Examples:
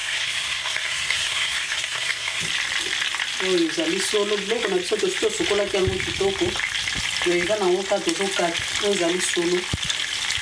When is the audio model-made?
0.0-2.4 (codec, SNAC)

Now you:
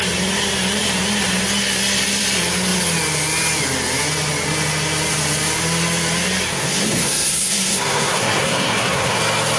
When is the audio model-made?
6.5-9.2 (codec, SNAC)